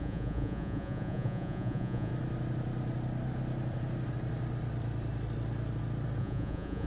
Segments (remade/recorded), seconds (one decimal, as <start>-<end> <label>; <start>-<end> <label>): 0.0-2.1 remade; 2.1-6.2 recorded; 6.2-6.9 remade